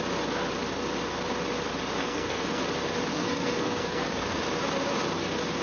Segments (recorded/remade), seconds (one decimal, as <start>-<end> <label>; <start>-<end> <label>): 0.0-2.0 recorded; 2.0-2.6 remade; 2.6-3.1 recorded; 3.1-4.4 remade; 4.4-5.6 recorded